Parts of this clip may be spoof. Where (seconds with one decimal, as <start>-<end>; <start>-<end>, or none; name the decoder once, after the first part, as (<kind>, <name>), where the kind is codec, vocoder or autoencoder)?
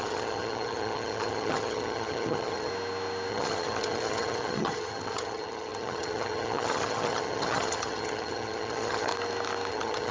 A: 0.0-2.7 (vocoder, HiFi-GAN); 3.3-9.1; 9.7-10.1